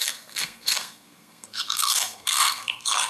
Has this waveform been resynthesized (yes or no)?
yes